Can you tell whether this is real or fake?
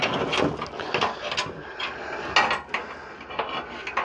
real